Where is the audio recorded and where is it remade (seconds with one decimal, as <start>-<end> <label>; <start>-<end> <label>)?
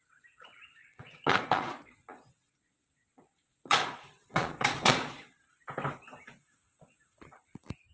0.0-0.8 recorded; 0.8-5.5 remade; 5.5-7.9 recorded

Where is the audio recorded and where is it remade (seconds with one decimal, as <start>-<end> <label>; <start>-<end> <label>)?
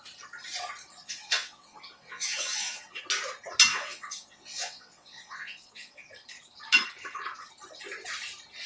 0.0-0.9 recorded; 0.9-3.0 remade; 3.0-3.7 recorded; 3.7-6.1 remade; 6.1-8.7 recorded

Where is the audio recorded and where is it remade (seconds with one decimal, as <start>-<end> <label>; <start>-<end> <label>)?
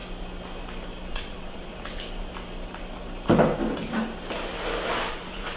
0.0-1.1 recorded; 1.1-1.7 remade; 1.7-5.1 recorded; 5.1-5.6 remade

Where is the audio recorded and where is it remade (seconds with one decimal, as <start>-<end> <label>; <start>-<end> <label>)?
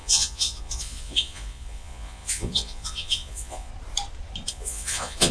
0.0-3.7 remade; 3.7-4.5 recorded; 4.5-5.3 remade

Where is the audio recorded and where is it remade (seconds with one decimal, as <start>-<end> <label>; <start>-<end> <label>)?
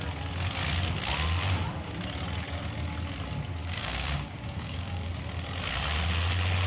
0.0-3.6 recorded; 3.6-5.1 remade; 5.1-6.7 recorded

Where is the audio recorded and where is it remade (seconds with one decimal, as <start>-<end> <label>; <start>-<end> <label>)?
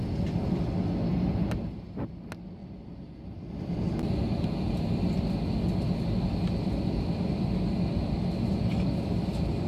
0.0-2.6 recorded; 2.6-3.9 remade; 3.9-9.7 recorded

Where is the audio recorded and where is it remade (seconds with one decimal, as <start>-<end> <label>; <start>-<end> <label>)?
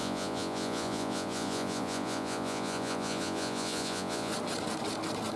0.0-4.3 remade; 4.3-5.4 recorded